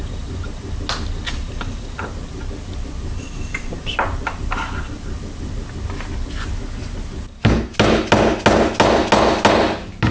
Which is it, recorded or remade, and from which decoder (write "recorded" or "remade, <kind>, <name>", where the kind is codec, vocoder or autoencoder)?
recorded